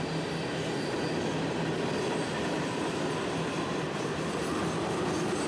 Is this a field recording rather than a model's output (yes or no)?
yes